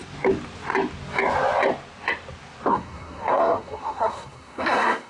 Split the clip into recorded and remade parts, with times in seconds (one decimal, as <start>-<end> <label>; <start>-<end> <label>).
0.0-2.7 recorded; 2.7-5.1 remade